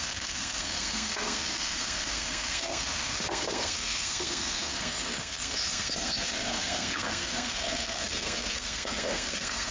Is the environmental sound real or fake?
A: fake